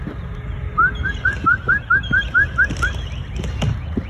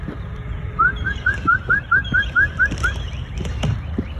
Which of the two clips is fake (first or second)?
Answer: second